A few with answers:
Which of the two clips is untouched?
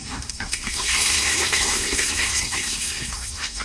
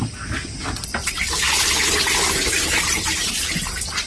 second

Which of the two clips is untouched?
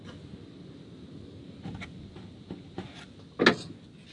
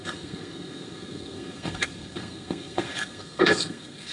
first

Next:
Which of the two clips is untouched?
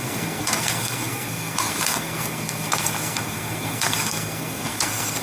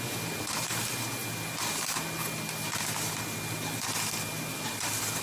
second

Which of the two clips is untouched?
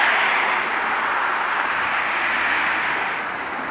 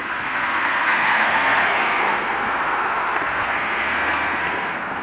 first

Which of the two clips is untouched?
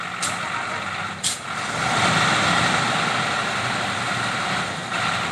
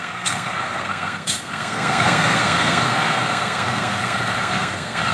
first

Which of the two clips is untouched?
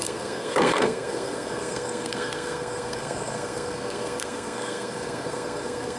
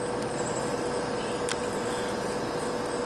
second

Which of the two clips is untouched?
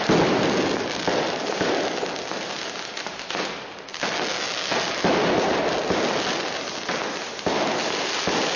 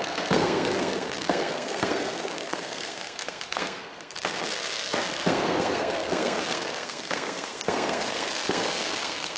first